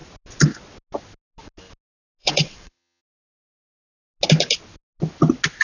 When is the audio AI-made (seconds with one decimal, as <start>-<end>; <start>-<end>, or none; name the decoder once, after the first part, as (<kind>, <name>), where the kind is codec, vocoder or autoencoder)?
2.2-3.0 (vocoder, WaveNeXt)